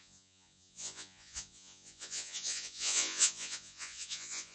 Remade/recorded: remade